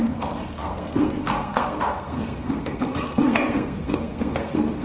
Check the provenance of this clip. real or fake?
fake